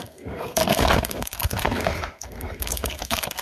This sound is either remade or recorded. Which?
remade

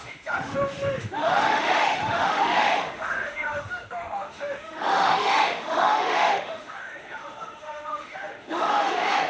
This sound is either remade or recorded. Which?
remade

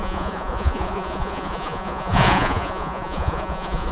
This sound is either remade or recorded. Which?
remade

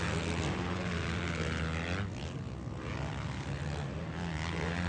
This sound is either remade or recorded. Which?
recorded